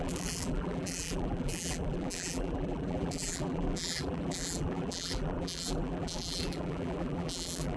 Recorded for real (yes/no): no